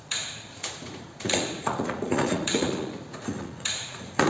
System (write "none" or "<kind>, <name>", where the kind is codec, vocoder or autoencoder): vocoder, Vocos